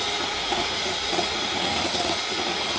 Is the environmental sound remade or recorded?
remade